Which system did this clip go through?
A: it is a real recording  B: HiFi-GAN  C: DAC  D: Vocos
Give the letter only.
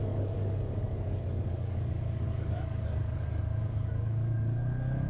C